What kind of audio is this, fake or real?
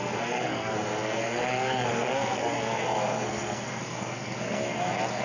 fake